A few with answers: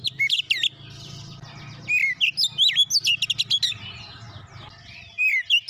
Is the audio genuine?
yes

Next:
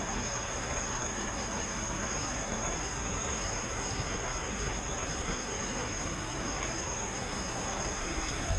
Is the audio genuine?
no